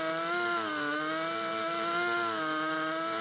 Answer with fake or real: real